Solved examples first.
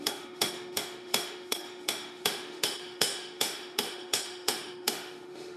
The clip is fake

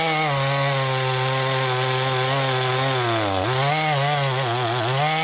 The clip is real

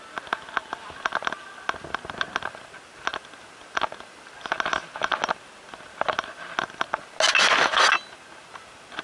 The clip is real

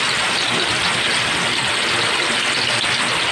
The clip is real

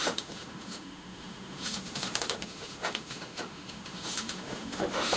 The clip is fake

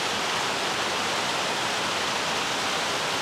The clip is real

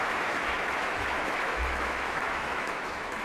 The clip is fake